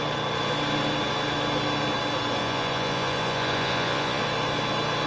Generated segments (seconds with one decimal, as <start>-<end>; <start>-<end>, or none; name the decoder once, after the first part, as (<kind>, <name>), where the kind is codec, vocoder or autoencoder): 2.4-4.2 (vocoder, Vocos)